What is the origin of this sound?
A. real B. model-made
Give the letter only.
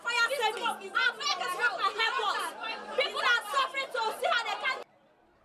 A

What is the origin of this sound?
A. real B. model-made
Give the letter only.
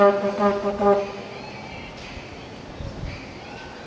A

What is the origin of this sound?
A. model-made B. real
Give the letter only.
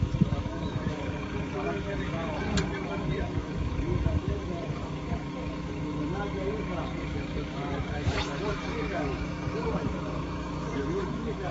A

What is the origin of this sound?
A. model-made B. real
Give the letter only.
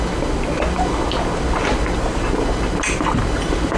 B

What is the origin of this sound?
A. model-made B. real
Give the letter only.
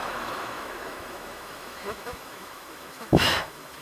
A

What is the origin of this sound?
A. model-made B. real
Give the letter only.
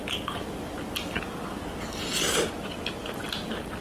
B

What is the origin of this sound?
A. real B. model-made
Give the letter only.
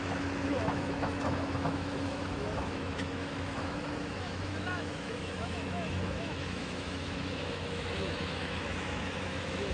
B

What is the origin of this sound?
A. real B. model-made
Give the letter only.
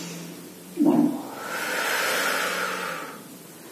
A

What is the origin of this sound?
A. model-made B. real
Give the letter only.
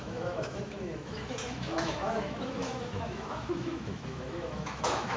A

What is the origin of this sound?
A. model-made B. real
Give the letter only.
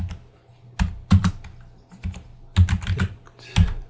B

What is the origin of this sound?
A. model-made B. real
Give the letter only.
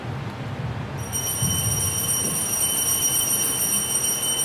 B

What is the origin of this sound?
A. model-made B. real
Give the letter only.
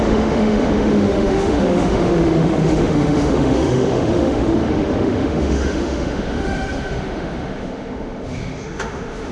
A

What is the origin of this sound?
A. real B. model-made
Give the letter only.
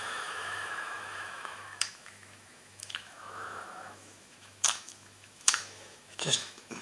B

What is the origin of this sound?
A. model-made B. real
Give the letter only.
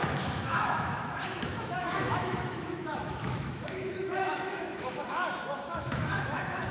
A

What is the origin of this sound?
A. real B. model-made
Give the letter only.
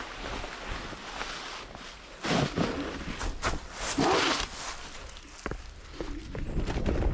A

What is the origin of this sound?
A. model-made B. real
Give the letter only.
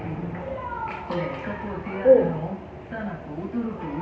B